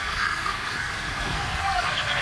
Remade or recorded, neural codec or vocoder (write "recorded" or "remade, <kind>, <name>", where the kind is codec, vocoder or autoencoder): remade, codec, SNAC